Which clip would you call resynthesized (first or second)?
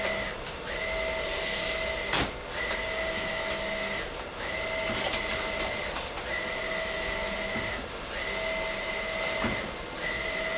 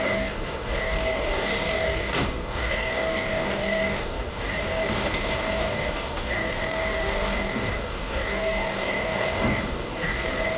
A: second